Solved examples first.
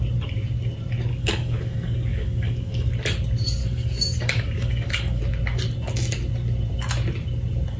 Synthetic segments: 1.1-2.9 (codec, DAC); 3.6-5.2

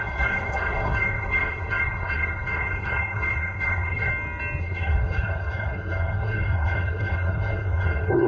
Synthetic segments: 0.0-4.1 (codec, SNAC); 4.6-8.3